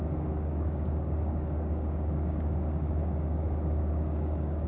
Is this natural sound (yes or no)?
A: no